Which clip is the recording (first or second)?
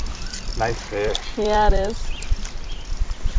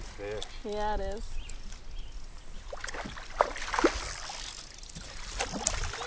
second